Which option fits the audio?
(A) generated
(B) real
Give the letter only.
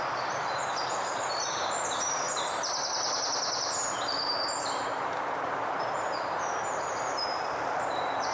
A